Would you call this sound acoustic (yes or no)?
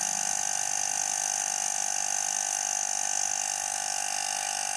yes